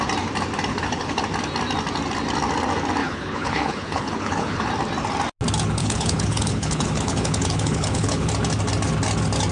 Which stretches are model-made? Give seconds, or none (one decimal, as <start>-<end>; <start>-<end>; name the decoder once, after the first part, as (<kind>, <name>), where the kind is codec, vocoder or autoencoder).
0.7-1.2 (codec, HILCodec); 3.0-4.7; 5.8-8.3